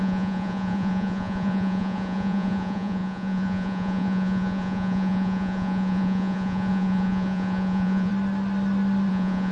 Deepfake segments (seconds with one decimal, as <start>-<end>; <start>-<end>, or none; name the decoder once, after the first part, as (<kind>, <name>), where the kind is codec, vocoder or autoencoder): 0.0-8.1 (vocoder, Vocos); 9.1-9.5